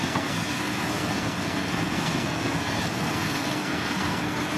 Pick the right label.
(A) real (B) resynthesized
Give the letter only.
B